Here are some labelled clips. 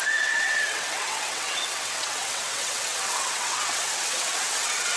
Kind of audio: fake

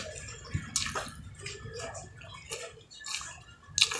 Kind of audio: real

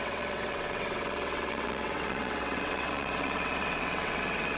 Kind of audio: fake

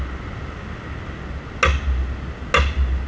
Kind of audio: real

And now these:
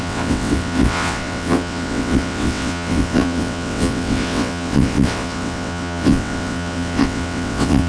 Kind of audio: fake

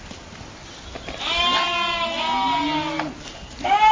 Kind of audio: real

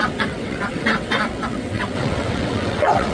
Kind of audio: fake